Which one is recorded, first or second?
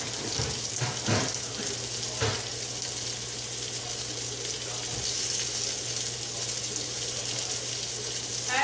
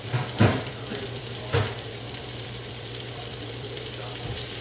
first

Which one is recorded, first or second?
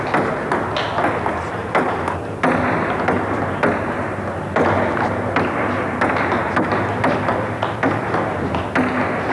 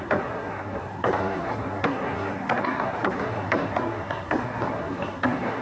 first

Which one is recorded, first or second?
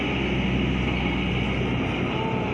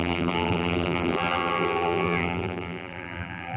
first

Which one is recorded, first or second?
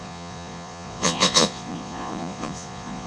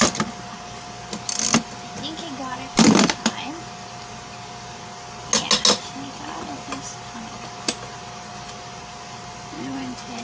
second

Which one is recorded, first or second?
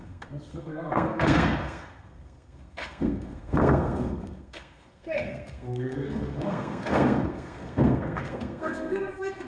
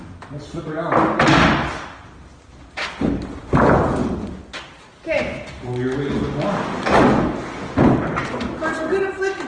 second